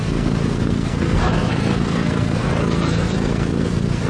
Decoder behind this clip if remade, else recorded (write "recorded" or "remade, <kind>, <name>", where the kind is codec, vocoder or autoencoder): remade, codec, SNAC